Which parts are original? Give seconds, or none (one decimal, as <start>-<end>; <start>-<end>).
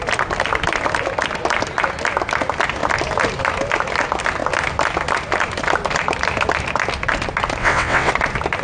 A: 0.0-7.6; 8.1-8.6